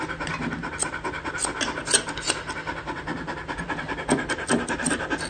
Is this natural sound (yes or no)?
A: yes